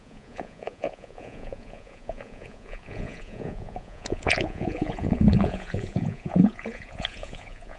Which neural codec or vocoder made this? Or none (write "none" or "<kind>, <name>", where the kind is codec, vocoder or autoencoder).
vocoder, Vocos